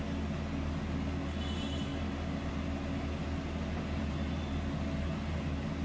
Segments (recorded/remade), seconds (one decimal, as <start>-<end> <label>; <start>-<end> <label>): 0.0-5.8 recorded